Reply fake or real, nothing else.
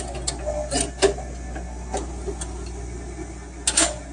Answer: real